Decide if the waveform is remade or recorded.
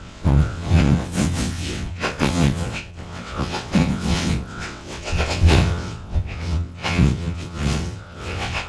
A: remade